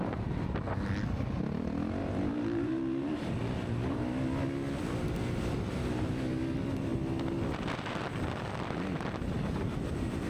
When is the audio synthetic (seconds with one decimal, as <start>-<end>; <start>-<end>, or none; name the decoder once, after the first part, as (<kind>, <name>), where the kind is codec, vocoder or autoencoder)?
2.0-3.3 (vocoder, BigVGAN v2)